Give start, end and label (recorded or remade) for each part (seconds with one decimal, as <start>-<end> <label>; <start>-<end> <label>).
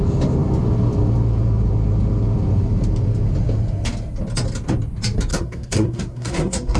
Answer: 0.0-5.3 recorded; 5.3-6.8 remade